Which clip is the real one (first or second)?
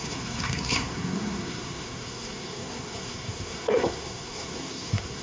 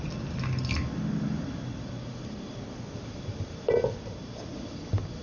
second